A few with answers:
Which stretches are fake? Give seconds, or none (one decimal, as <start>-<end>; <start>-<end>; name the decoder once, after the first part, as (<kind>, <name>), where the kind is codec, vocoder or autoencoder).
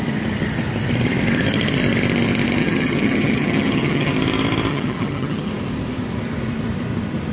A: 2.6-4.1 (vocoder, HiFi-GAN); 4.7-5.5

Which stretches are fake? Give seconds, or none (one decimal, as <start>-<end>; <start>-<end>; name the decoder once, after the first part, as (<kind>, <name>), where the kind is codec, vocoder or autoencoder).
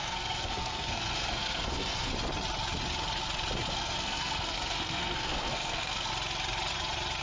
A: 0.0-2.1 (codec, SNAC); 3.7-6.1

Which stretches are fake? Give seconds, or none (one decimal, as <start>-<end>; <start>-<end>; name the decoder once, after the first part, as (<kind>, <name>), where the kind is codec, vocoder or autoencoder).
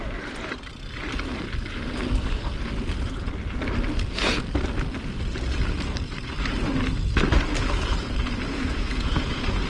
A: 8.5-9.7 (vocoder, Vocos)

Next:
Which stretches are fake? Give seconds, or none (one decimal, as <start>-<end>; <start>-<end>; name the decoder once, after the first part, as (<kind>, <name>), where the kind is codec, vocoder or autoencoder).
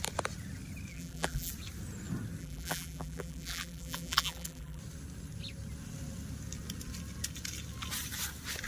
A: 0.9-1.5 (vocoder, BigVGAN v2); 2.4-4.8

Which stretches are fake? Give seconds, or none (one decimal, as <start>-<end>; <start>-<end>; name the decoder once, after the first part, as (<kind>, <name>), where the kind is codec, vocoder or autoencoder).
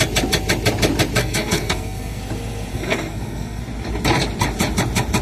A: 1.2-2.2 (codec, SNAC); 2.7-3.6